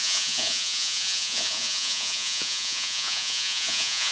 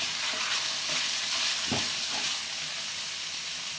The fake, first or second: first